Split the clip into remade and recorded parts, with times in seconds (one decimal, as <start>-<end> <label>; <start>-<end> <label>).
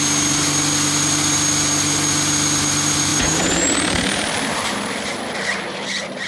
0.0-3.1 recorded; 3.1-5.1 remade; 5.1-6.3 recorded